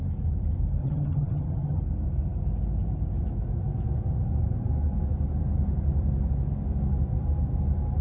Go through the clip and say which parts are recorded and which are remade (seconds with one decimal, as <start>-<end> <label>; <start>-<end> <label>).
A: 0.0-0.8 recorded; 0.8-1.8 remade; 1.8-8.0 recorded

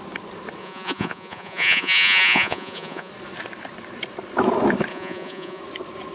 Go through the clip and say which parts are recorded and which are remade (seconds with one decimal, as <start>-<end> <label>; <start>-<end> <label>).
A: 0.0-0.6 recorded; 0.6-3.1 remade; 3.1-4.9 recorded; 4.9-5.6 remade; 5.6-6.1 recorded

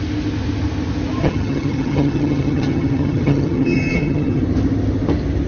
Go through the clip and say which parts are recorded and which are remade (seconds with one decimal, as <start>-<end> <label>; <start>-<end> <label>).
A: 0.0-1.2 recorded; 1.2-4.4 remade; 4.4-5.5 recorded

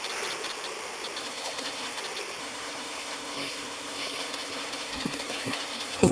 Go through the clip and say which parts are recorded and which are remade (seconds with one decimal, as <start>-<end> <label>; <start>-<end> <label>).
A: 0.0-1.2 recorded; 1.2-2.0 remade; 2.0-2.4 recorded; 2.4-6.1 remade

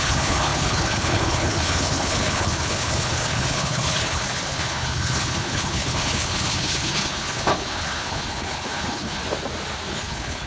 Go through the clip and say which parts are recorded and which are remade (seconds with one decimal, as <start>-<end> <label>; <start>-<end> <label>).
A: 0.0-9.2 remade; 9.2-9.9 recorded; 9.9-10.5 remade

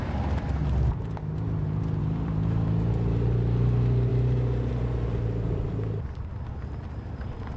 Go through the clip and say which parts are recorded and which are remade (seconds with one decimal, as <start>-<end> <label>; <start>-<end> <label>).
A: 0.0-0.6 remade; 0.6-2.0 recorded; 2.0-7.6 remade

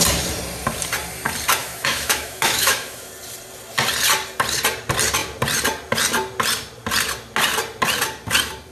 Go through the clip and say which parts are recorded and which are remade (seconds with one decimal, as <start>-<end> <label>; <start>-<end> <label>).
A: 0.0-1.6 recorded; 1.6-3.1 remade; 3.1-8.7 recorded